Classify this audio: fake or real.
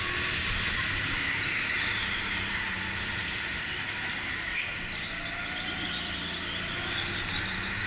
real